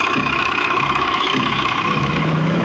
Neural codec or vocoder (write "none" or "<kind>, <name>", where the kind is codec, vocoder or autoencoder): autoencoder, DAC-VAE